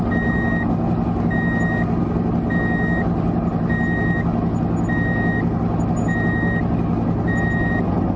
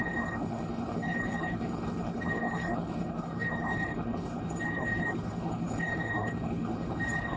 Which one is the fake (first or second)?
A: second